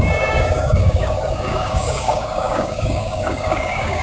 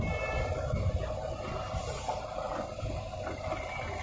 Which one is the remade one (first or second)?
first